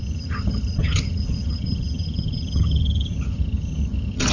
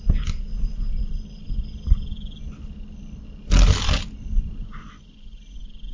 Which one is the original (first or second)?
second